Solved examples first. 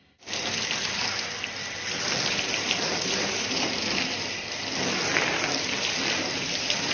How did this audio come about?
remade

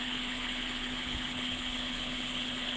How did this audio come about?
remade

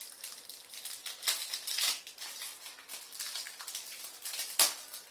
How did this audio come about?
recorded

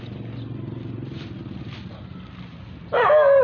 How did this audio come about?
recorded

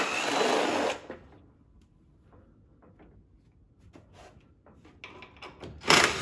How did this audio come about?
recorded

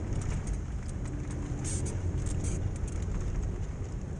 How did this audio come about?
recorded